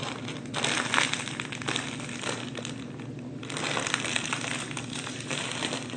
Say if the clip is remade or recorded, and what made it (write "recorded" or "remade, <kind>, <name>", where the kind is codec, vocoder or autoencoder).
recorded